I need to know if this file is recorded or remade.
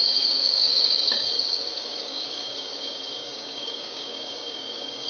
remade